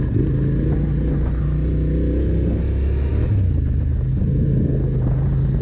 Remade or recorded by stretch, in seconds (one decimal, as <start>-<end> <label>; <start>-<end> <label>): 0.0-5.6 recorded